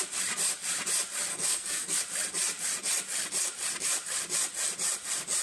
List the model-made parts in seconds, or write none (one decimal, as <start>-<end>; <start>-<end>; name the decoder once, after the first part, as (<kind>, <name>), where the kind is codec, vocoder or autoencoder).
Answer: 1.3-2.0 (codec, SNAC)